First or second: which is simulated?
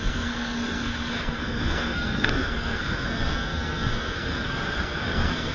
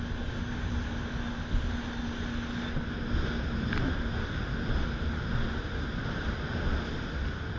first